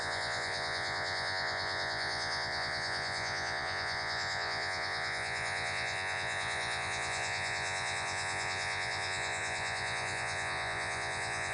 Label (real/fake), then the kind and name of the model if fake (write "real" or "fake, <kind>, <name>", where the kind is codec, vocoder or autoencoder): fake, vocoder, Vocos